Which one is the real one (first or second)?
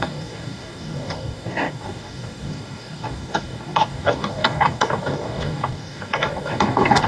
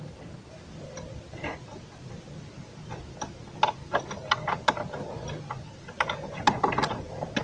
second